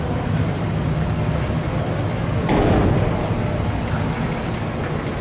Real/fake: real